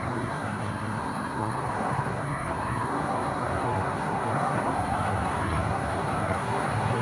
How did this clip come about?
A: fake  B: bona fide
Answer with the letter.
A